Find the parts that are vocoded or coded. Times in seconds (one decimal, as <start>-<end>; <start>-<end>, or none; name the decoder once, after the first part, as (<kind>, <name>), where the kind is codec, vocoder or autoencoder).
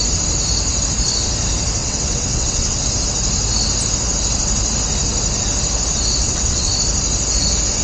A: 1.8-2.9 (vocoder, WaveNeXt); 6.2-6.7